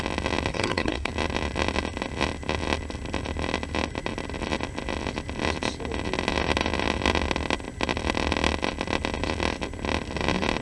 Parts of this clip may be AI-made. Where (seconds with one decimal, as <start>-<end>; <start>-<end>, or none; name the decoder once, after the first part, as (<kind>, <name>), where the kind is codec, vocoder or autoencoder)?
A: 0.5-1.1 (codec, SNAC)